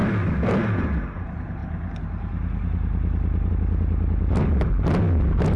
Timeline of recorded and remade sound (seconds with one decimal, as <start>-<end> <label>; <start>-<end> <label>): 0.0-5.6 recorded